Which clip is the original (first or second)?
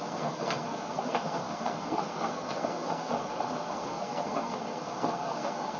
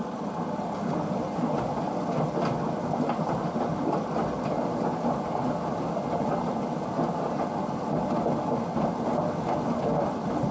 second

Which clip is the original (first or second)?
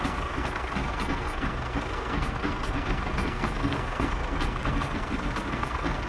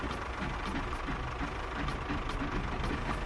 second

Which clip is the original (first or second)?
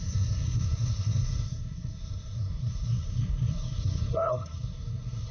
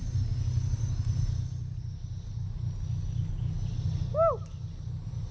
second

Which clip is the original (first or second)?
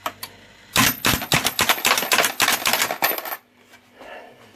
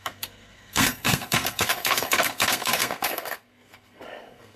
first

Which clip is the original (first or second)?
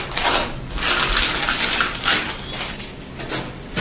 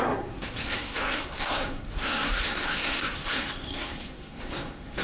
first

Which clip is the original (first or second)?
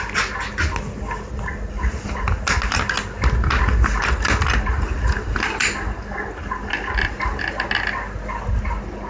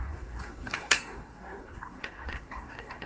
first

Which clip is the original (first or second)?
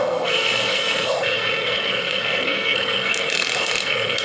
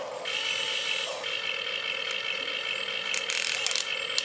second